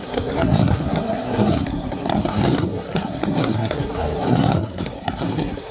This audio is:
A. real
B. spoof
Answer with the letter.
B